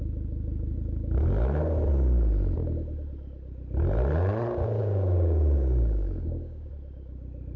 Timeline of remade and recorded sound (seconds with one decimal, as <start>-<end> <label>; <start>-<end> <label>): 0.0-4.8 recorded; 4.8-6.7 remade; 6.7-7.6 recorded